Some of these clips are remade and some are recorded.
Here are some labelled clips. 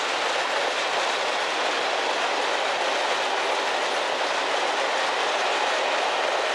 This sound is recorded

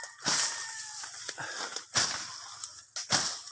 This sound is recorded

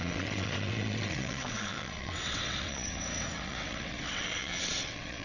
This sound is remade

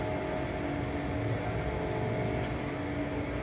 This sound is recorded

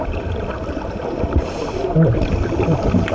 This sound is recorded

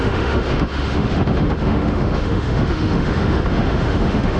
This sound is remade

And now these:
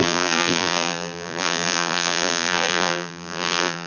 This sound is remade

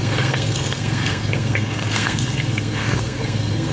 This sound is remade